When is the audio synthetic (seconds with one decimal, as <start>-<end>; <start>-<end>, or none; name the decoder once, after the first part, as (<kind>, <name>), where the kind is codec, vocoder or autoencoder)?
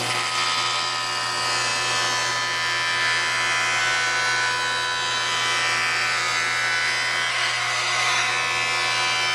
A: 7.3-8.3 (codec, SNAC)